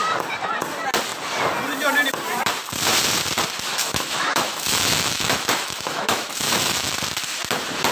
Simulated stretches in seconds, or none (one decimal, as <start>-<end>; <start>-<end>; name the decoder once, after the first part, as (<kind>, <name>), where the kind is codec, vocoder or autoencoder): 3.7-6.9 (autoencoder, DAC-VAE)